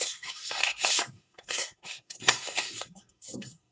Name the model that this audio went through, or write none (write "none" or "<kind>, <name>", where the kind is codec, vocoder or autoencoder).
codec, SNAC